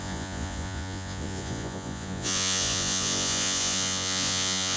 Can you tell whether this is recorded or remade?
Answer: remade